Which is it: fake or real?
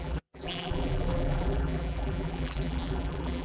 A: fake